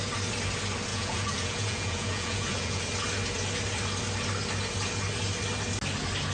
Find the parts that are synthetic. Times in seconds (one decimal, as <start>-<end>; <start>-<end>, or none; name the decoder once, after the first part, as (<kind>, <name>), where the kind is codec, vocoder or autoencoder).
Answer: 0.9-2.8 (vocoder, Vocos)